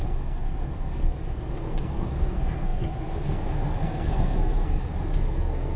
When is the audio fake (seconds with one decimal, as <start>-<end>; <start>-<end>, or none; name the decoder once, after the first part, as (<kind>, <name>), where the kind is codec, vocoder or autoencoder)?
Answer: 0.0-5.8 (codec, SNAC)